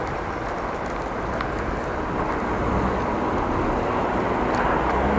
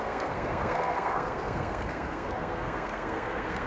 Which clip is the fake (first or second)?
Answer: second